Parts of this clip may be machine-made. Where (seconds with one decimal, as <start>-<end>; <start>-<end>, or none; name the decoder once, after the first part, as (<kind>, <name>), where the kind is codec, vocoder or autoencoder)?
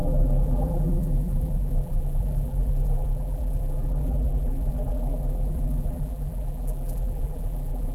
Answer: 0.0-7.9 (vocoder, BigVGAN v2)